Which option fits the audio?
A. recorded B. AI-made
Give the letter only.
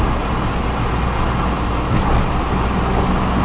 A